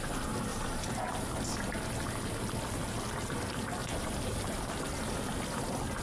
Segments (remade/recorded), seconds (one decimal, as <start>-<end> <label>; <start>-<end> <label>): 0.0-0.5 recorded; 0.5-1.1 remade; 1.1-3.8 recorded; 3.8-4.7 remade; 4.7-6.0 recorded